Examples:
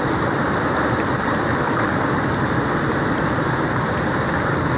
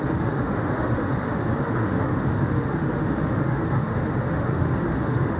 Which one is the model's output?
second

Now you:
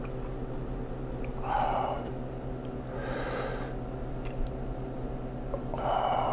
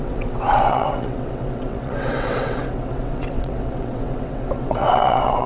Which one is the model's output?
second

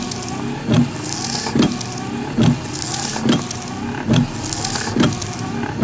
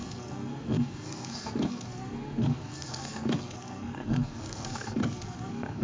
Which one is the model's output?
second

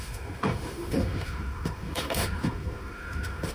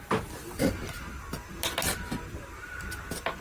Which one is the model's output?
first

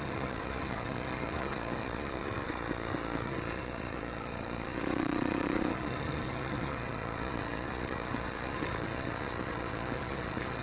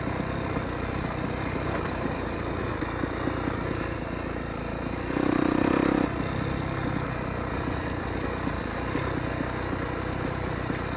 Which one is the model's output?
first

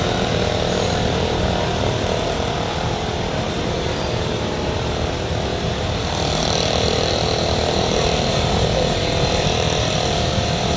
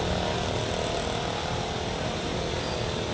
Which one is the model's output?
first